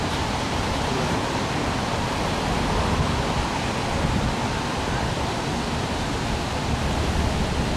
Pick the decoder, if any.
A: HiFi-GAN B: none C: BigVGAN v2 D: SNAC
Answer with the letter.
C